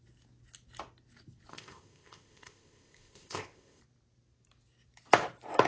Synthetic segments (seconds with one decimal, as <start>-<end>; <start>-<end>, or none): 1.5-3.8